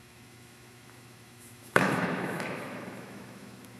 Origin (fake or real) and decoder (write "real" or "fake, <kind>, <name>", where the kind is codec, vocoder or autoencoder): fake, autoencoder, DAC-VAE